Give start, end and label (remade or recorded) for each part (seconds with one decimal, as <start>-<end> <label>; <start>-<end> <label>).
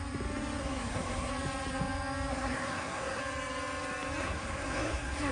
0.0-0.6 recorded; 0.6-1.3 remade; 1.3-2.3 recorded; 2.3-3.2 remade; 3.2-4.2 recorded; 4.2-5.3 remade